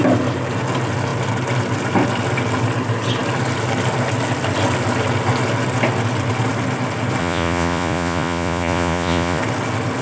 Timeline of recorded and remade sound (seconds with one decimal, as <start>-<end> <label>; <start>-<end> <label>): 0.0-7.2 recorded; 7.2-9.4 remade; 9.4-10.0 recorded